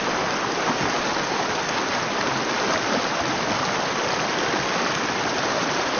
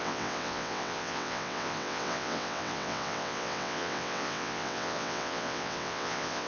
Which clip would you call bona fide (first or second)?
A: first